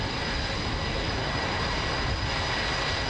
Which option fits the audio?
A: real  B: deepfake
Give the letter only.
A